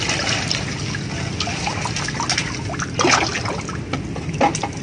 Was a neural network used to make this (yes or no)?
no